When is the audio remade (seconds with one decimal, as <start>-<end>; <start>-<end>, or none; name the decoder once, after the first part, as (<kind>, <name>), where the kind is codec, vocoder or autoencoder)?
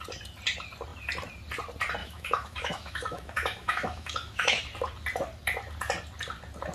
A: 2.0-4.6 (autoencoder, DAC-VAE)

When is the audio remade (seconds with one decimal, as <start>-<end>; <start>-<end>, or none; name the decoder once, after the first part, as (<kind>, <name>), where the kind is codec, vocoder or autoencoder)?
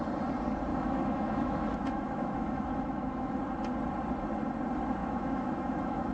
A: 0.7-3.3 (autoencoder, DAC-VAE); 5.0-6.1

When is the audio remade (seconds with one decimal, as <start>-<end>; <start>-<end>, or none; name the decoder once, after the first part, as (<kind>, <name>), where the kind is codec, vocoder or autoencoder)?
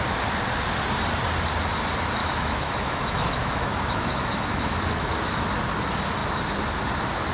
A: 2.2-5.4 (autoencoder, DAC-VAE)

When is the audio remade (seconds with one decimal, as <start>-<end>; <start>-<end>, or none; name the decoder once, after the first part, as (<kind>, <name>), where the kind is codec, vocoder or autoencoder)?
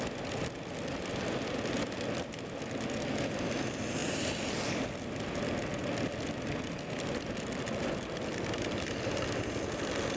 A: none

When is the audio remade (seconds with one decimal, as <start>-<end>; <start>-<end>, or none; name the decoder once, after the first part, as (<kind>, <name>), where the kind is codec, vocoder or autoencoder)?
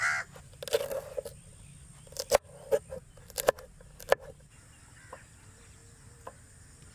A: none